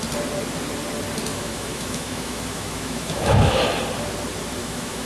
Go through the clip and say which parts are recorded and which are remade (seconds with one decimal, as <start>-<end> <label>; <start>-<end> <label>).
0.0-1.3 recorded; 1.3-3.6 remade; 3.6-4.6 recorded; 4.6-5.1 remade